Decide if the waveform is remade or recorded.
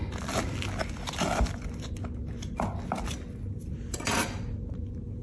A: recorded